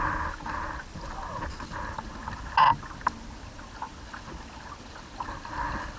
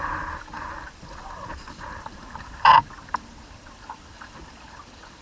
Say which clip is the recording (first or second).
first